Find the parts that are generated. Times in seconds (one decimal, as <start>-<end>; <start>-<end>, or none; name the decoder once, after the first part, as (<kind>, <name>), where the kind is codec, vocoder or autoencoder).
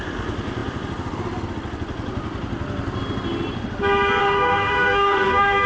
4.2-5.7 (autoencoder, DAC-VAE)